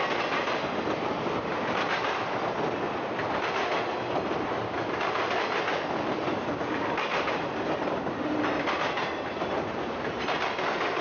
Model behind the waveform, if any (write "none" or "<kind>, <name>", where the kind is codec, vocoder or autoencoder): none